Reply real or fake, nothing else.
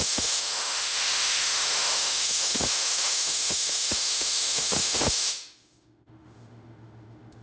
fake